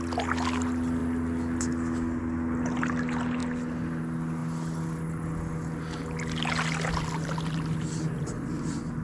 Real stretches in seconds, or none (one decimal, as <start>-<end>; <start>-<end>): 0.0-9.0